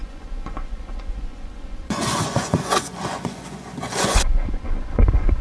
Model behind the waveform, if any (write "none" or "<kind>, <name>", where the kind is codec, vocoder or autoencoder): vocoder, Vocos